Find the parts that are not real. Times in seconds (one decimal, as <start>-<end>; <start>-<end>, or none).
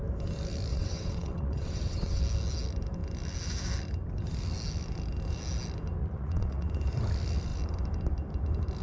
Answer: 0.7-2.2; 6.0-6.7